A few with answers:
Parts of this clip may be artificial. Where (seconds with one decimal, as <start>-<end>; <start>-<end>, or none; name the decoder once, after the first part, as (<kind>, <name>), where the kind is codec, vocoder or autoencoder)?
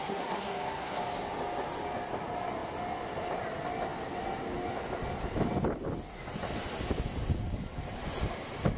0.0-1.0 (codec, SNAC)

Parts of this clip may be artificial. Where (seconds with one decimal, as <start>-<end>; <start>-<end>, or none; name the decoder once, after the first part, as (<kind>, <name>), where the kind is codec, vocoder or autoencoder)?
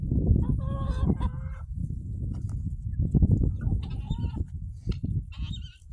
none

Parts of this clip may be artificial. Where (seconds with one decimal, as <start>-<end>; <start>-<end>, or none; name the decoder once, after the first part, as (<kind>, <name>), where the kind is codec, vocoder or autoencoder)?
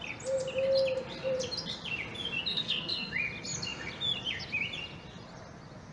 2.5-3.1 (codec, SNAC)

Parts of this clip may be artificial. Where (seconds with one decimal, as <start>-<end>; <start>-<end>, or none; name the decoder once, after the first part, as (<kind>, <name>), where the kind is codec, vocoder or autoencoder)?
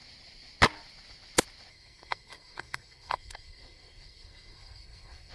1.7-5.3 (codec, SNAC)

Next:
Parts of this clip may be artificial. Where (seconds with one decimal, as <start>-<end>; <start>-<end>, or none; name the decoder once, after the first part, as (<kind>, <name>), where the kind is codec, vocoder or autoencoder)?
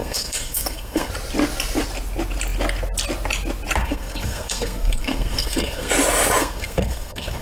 0.0-1.1 (codec, SNAC); 3.8-5.9; 6.4-7.4